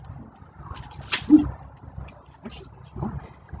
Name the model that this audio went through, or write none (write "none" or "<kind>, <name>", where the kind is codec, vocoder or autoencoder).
none